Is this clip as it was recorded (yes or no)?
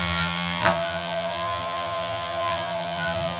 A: no